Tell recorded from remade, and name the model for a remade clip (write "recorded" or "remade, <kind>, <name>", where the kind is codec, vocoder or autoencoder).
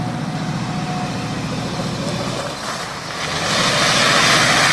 recorded